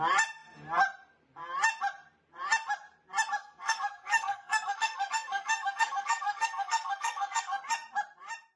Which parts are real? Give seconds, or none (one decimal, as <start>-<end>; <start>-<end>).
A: 0.0-3.4; 7.6-8.6